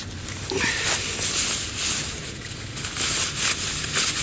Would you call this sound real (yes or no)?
yes